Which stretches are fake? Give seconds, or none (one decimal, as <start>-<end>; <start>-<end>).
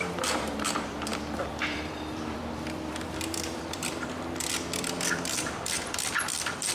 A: 0.0-6.7